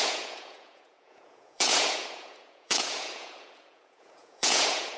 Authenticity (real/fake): fake